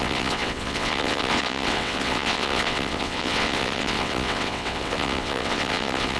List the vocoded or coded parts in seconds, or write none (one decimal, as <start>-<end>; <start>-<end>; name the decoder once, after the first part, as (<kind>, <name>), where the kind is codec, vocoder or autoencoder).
0.0-6.2 (vocoder, WaveNeXt)